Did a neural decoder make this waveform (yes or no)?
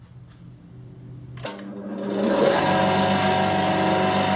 no